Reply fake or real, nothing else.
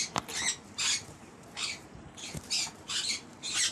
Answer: fake